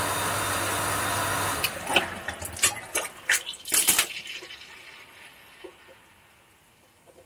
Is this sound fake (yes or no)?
no